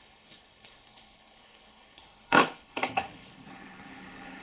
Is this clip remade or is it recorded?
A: remade